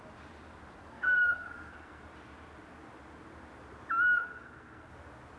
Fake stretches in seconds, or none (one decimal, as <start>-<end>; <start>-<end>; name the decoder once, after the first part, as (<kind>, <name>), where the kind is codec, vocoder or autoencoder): 0.8-2.0 (codec, SNAC); 4.2-4.9

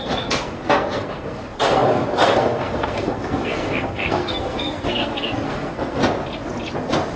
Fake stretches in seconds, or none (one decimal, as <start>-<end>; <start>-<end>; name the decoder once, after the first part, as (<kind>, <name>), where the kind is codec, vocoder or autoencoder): 0.0-6.0 (codec, SNAC)

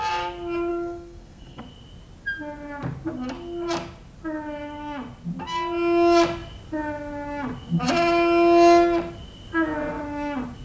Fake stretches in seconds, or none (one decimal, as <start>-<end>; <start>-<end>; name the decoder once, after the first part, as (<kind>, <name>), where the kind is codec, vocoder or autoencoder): 0.7-1.6 (codec, SNAC)